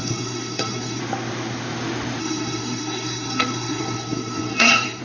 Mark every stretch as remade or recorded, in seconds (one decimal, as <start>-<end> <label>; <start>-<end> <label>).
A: 0.0-1.0 remade; 1.0-2.2 recorded; 2.2-5.0 remade